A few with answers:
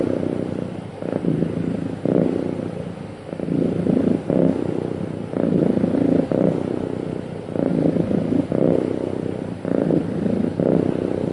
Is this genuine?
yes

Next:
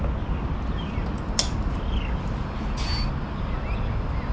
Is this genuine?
yes